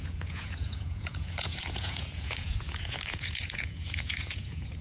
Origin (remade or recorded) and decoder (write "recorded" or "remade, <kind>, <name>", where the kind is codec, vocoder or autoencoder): remade, vocoder, Vocos